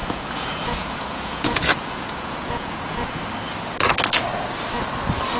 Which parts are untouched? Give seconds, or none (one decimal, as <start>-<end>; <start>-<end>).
3.2-5.4